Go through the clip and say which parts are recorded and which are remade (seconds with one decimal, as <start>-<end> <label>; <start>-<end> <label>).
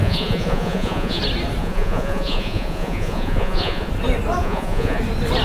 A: 0.0-1.2 remade; 1.2-1.6 recorded; 1.6-3.9 remade; 3.9-4.4 recorded; 4.4-5.0 remade; 5.0-5.4 recorded